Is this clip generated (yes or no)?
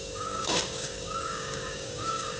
yes